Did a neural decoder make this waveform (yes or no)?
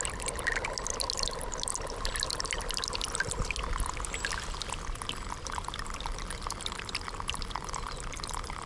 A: no